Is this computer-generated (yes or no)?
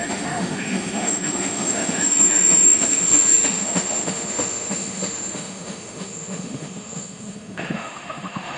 yes